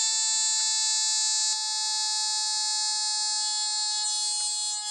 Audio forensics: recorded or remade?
recorded